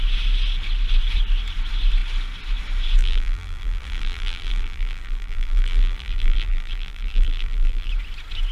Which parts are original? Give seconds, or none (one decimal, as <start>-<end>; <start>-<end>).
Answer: 0.0-3.0; 7.9-8.5